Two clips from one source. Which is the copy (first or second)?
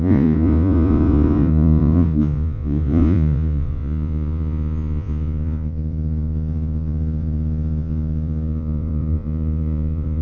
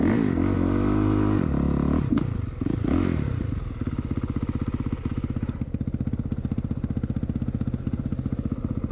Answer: first